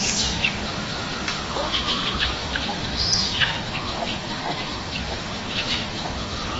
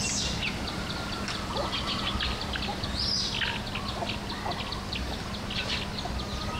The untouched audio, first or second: second